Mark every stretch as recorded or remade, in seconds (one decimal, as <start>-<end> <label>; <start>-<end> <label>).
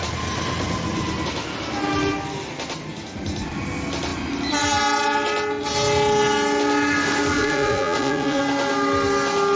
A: 0.0-7.3 recorded; 7.3-8.4 remade; 8.4-9.6 recorded